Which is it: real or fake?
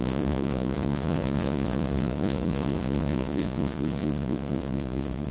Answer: fake